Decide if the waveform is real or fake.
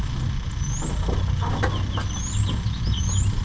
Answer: real